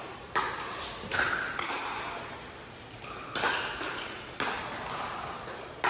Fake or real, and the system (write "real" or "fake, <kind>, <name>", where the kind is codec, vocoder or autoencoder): real